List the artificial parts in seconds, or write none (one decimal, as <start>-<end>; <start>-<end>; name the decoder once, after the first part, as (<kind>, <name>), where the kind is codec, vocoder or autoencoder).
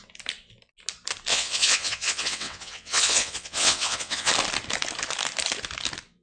1.3-4.3 (vocoder, WaveNeXt)